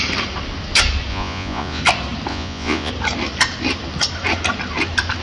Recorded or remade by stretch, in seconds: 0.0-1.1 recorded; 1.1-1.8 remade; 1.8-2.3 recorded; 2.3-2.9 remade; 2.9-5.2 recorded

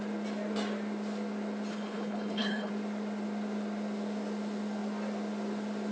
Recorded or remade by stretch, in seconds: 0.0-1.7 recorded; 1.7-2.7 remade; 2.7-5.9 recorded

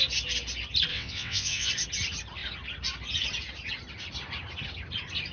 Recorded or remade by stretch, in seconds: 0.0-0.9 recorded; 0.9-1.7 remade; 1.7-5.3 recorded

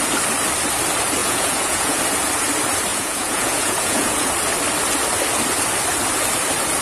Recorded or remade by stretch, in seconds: 0.0-1.2 recorded; 1.2-2.0 remade; 2.0-2.9 recorded; 2.9-4.3 remade; 4.3-6.8 recorded

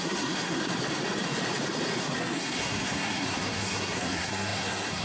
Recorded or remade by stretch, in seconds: 0.0-0.6 remade; 0.6-2.0 recorded; 2.0-5.0 remade

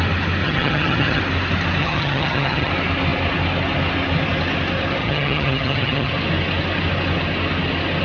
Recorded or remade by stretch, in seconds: 0.0-0.4 recorded; 0.4-1.2 remade; 1.2-1.8 recorded; 1.8-2.7 remade; 2.7-5.0 recorded; 5.0-6.1 remade; 6.1-8.0 recorded

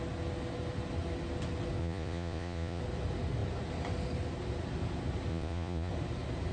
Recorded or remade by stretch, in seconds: 0.0-1.8 recorded; 1.8-2.8 remade; 2.8-5.3 recorded; 5.3-5.9 remade; 5.9-6.5 recorded